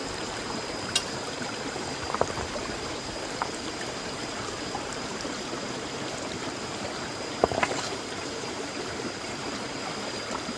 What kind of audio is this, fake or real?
fake